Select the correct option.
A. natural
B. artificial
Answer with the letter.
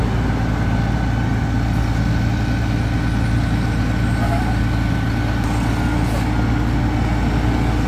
A